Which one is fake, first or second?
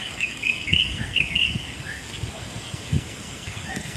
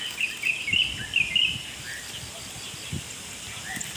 first